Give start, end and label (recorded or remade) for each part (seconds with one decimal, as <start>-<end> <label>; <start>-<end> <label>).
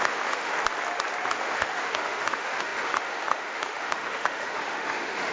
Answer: 0.0-0.5 remade; 0.5-1.4 recorded; 1.4-5.3 remade